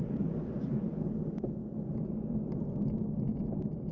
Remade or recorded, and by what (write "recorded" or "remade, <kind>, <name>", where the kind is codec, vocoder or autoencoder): recorded